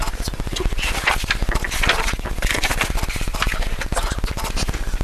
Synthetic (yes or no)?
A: no